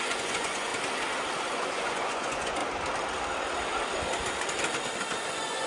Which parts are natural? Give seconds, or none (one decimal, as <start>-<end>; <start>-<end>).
0.7-1.5; 2.6-5.3